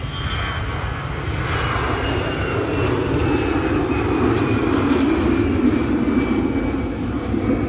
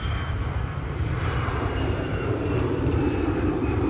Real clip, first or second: first